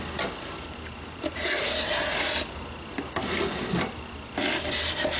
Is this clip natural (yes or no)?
yes